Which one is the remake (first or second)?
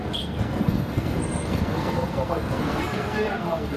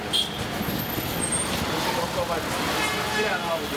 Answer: first